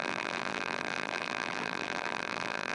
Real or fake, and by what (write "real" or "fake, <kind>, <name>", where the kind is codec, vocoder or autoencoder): fake, vocoder, BigVGAN v2